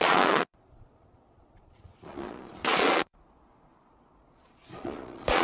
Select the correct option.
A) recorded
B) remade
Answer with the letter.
B